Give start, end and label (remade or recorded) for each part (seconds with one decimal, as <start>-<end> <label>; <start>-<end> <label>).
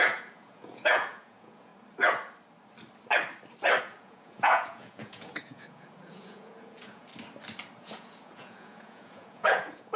0.0-1.7 remade; 1.7-3.8 recorded; 3.8-7.1 remade; 7.1-7.8 recorded; 7.8-10.0 remade